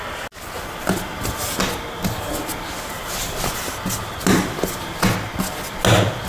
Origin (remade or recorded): recorded